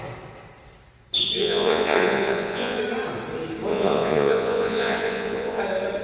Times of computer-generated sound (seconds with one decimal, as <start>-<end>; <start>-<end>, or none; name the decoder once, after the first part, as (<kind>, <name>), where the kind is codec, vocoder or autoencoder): 1.4-2.8 (vocoder, Vocos); 3.7-5.6

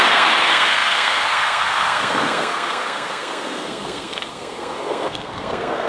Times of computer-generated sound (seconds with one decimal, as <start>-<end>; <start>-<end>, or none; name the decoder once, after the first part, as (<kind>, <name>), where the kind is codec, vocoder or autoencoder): 0.0-5.9 (codec, SNAC)